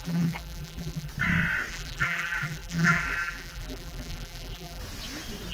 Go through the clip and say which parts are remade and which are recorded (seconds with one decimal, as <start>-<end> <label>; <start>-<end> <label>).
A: 0.0-1.1 remade; 1.1-1.7 recorded; 1.7-4.8 remade; 4.8-5.5 recorded